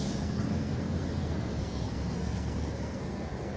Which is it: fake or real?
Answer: fake